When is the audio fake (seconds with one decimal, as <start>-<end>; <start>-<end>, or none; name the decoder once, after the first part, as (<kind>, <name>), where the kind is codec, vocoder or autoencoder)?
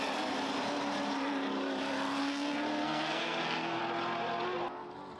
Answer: 2.2-3.8 (codec, SNAC)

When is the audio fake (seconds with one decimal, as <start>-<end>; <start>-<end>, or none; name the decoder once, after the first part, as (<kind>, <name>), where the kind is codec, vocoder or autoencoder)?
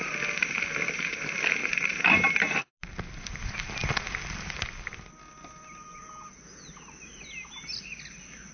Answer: 1.6-2.6 (vocoder, BigVGAN v2)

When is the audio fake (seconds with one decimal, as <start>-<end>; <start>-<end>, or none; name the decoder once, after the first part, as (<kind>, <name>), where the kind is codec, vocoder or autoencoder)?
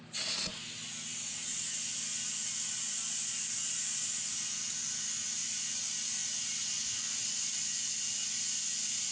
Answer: none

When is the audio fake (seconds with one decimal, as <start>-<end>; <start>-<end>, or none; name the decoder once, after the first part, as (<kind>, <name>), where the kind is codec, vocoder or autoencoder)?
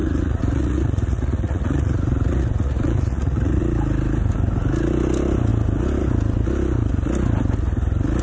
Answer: 0.0-3.6 (vocoder, Vocos)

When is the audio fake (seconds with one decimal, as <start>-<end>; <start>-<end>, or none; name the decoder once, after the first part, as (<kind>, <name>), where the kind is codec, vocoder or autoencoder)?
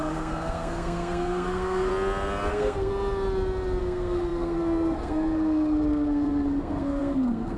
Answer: 0.0-1.9 (codec, SNAC); 2.5-2.9; 3.8-7.6